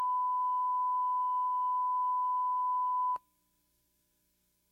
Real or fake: fake